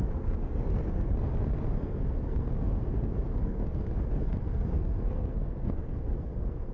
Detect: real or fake fake